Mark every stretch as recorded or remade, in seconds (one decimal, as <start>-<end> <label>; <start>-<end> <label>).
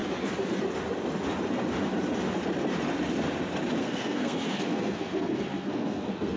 0.0-3.8 recorded; 3.8-6.4 remade